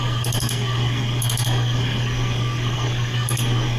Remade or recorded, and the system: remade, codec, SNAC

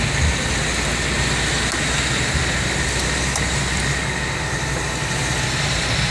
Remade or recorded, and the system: recorded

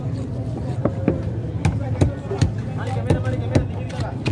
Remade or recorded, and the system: recorded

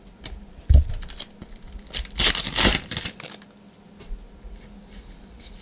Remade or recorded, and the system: recorded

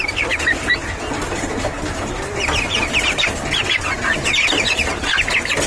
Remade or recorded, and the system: recorded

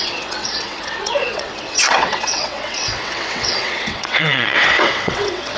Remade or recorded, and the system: remade, vocoder, WaveNeXt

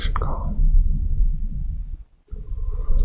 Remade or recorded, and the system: recorded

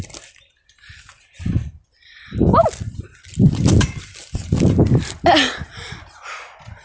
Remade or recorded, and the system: recorded